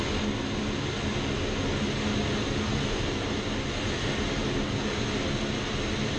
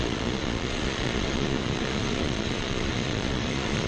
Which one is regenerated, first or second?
second